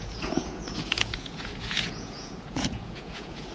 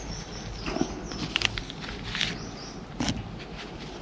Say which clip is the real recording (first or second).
second